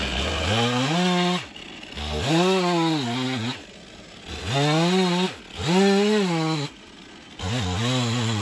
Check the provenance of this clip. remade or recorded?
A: recorded